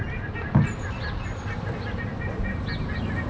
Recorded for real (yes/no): yes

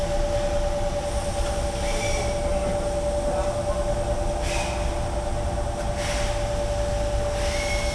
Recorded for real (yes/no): yes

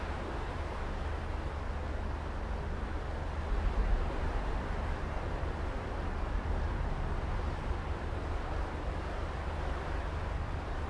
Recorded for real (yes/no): yes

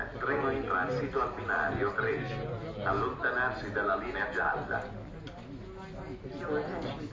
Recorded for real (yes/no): yes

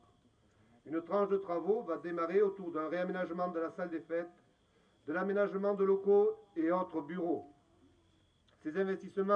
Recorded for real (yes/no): yes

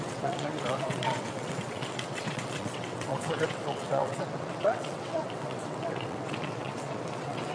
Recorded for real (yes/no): no